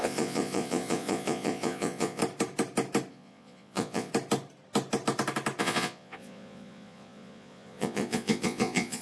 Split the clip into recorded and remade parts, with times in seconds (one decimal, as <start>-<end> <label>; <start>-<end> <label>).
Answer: 0.0-2.2 remade; 2.2-3.1 recorded; 3.1-4.1 remade; 4.1-5.6 recorded; 5.6-9.0 remade